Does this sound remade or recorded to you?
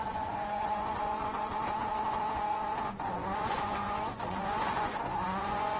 remade